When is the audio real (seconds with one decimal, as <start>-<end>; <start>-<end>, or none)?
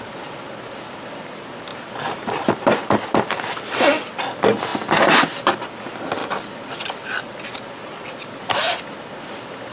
0.0-1.7; 3.9-9.7